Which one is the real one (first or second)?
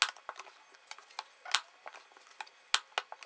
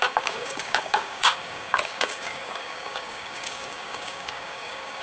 first